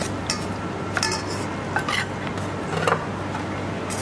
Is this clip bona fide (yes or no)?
yes